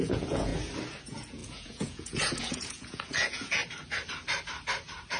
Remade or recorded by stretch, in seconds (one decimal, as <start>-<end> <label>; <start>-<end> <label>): 0.0-0.5 remade; 0.5-1.0 recorded; 1.0-3.6 remade; 3.6-5.2 recorded